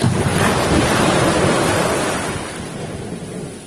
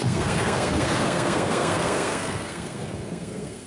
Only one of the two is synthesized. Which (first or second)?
second